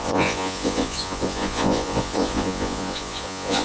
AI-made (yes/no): yes